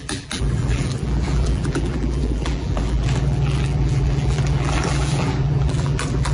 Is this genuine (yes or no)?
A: no